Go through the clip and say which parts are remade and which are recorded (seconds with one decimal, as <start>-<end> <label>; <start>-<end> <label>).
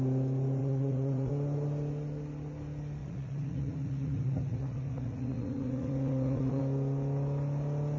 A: 0.0-0.6 recorded; 0.6-1.3 remade; 1.3-3.0 recorded; 3.0-6.6 remade; 6.6-8.0 recorded